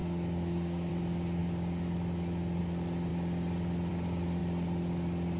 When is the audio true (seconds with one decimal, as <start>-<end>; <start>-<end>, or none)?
0.9-5.4